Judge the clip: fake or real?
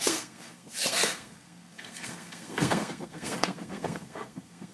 fake